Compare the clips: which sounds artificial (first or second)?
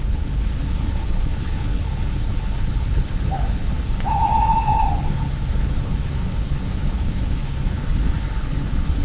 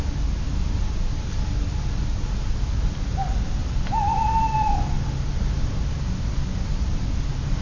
first